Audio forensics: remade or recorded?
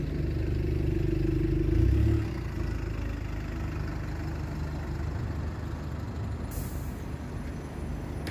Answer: recorded